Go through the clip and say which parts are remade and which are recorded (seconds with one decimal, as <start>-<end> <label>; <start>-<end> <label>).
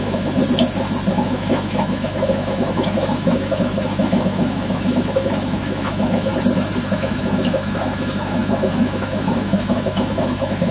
0.0-0.4 remade; 0.4-1.1 recorded; 1.1-6.3 remade; 6.3-6.9 recorded; 6.9-10.7 remade